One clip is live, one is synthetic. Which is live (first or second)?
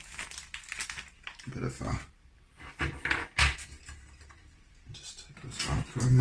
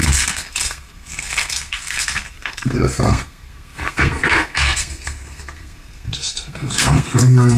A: first